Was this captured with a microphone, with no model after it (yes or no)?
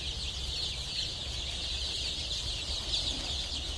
yes